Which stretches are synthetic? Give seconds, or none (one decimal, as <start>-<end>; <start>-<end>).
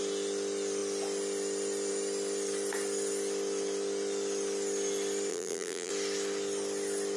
5.3-5.9